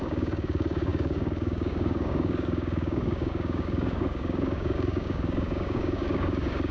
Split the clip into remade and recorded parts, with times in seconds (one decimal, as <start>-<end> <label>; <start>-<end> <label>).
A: 0.0-6.7 remade